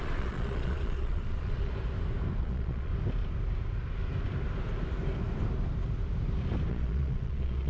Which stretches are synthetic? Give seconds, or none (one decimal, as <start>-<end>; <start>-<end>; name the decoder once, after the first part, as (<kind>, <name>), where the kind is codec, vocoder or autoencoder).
0.0-1.7 (vocoder, Vocos); 2.4-2.9; 6.7-7.7